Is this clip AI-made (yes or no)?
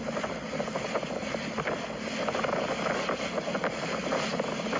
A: no